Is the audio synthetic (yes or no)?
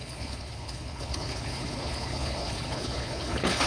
yes